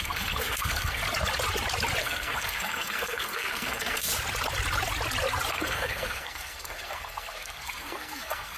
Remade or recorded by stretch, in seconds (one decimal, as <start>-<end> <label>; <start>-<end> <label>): 0.0-1.0 remade; 1.0-2.0 recorded; 2.0-4.1 remade; 4.1-5.5 recorded; 5.5-8.6 remade